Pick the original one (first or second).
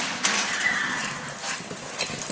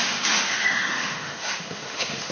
first